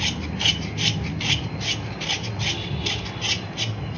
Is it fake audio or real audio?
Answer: real